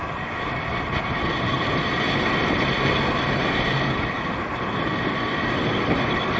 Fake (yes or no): no